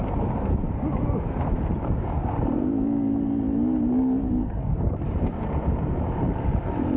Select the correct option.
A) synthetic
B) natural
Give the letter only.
A